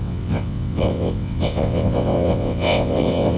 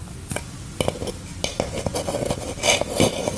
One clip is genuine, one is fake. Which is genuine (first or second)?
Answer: second